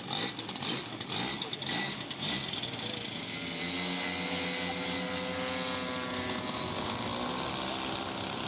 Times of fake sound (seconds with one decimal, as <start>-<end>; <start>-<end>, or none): none